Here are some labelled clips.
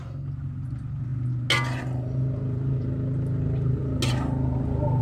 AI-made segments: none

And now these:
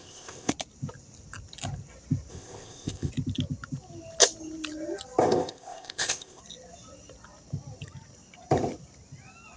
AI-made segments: 0.0-0.5 (codec, ZipCodec); 2.3-3.1; 5.2-6.4

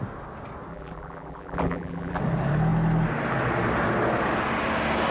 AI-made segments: 0.7-2.2 (vocoder, BigVGAN v2)

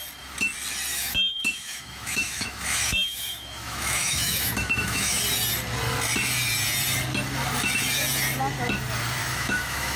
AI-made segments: 0.9-5.2 (autoencoder, DAC-VAE); 9.2-10.0

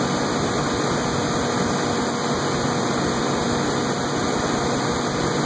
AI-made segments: none

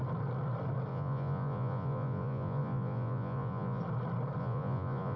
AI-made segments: 0.9-3.8 (vocoder, Vocos); 4.4-5.2

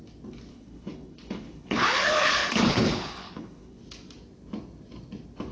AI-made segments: 0.5-3.8 (codec, HILCodec)

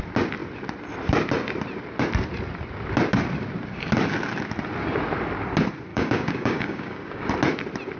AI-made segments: 5.9-7.3 (codec, DAC)